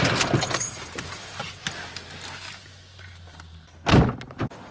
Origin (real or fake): real